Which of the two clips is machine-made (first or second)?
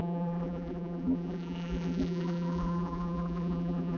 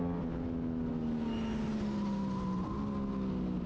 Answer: first